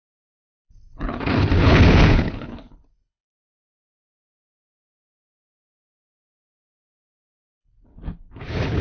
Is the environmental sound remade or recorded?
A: remade